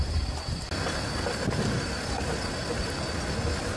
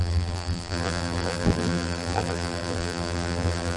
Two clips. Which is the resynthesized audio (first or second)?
second